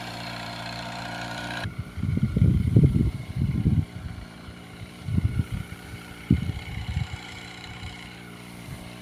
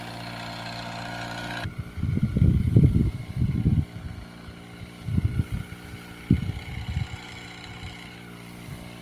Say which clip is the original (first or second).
second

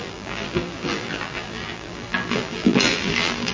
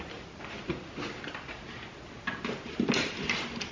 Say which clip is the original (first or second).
second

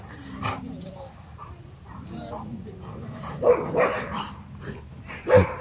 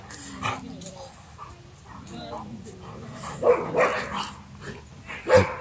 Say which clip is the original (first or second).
second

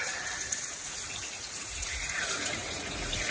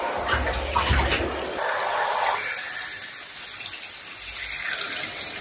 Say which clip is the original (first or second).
second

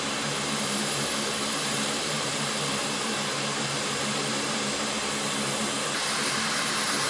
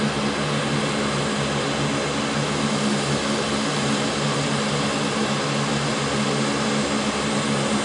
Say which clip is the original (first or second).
second